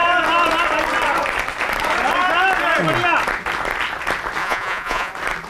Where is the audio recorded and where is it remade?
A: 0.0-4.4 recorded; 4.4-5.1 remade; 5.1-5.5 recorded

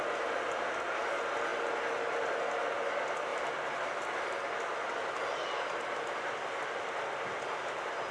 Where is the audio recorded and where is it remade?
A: 0.0-8.1 recorded

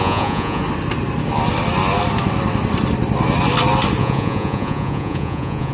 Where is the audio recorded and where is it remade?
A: 0.0-0.6 remade; 0.6-4.0 recorded; 4.0-5.7 remade

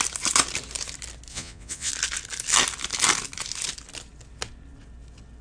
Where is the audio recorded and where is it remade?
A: 0.0-1.3 recorded; 1.3-1.9 remade; 1.9-5.4 recorded

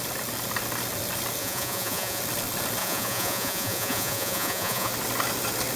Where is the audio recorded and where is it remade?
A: 0.0-1.4 recorded; 1.4-2.2 remade; 2.2-2.8 recorded; 2.8-4.9 remade; 4.9-5.8 recorded